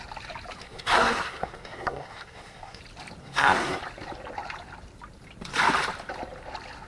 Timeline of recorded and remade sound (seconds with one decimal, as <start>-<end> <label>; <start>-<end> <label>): 0.0-0.6 recorded; 0.6-2.8 remade; 2.8-3.2 recorded; 3.2-3.8 remade; 3.8-6.9 recorded